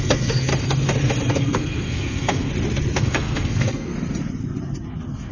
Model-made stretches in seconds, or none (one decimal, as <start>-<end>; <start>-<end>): 0.0-0.5; 1.3-2.5; 3.0-3.9